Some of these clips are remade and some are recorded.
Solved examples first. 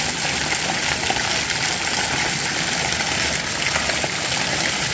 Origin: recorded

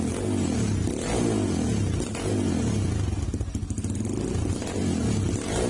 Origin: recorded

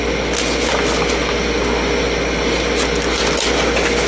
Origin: recorded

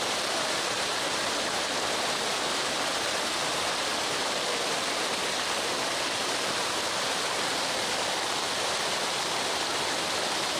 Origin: recorded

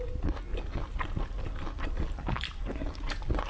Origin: recorded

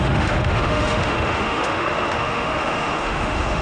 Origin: remade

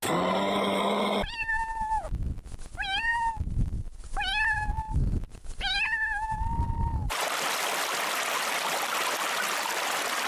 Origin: recorded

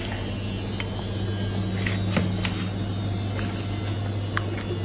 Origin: recorded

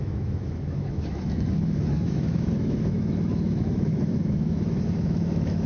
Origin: remade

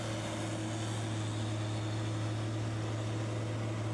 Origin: recorded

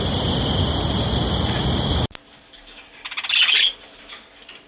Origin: recorded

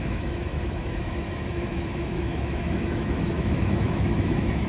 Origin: remade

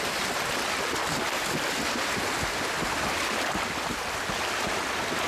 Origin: recorded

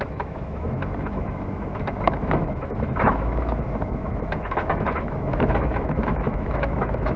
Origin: remade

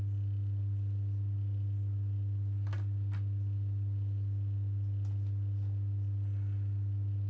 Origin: recorded